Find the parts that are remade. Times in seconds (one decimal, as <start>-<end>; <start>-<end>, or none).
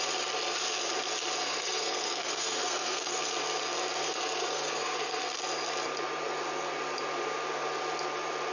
1.4-3.3; 4.0-5.3